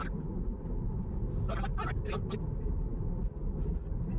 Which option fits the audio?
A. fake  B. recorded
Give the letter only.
B